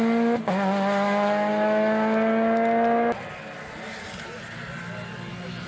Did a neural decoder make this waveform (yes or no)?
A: no